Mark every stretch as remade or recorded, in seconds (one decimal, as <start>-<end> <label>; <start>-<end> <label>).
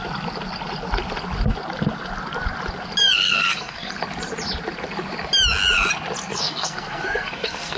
0.0-3.0 recorded; 3.0-3.9 remade; 3.9-6.3 recorded; 6.3-7.8 remade